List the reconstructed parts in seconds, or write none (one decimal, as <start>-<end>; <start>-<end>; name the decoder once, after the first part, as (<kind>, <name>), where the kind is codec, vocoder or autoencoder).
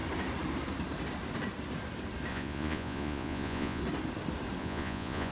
2.3-3.8 (vocoder, Vocos); 4.6-5.3